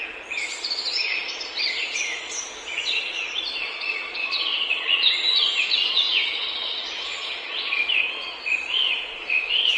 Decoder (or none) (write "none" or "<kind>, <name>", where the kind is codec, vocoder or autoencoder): vocoder, Vocos